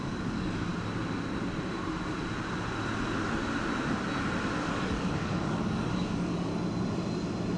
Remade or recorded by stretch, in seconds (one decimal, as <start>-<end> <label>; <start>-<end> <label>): 0.0-0.7 remade; 0.7-4.7 recorded; 4.7-6.5 remade; 6.5-7.6 recorded